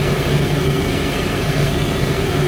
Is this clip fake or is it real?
fake